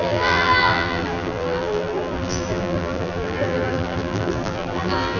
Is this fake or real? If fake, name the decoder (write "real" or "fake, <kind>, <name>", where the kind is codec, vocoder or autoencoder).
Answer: fake, vocoder, BigVGAN v2